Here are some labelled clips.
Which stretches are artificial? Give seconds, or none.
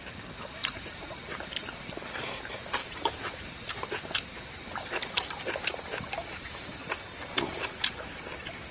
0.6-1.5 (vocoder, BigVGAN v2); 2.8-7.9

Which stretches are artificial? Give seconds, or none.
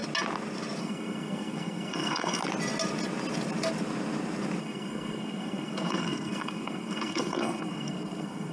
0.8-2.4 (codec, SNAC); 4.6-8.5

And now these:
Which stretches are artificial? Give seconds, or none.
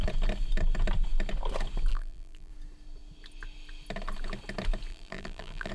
1.9-2.5 (vocoder, BigVGAN v2); 4.9-5.7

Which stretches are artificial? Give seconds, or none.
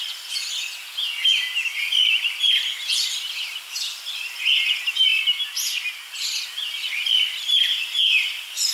none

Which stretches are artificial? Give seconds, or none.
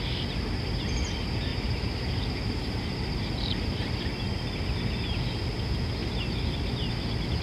1.5-3.9 (vocoder, BigVGAN v2)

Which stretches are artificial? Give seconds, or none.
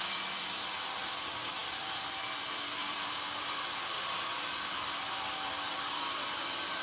none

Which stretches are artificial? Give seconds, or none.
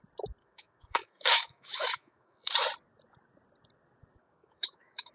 0.4-2.5 (autoencoder, DAC-VAE); 4.2-5.1